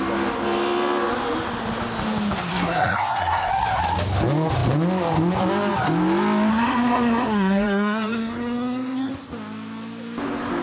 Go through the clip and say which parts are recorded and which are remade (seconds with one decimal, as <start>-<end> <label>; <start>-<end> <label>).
0.0-2.5 recorded; 2.5-3.5 remade; 3.5-6.5 recorded; 6.5-9.1 remade; 9.1-10.6 recorded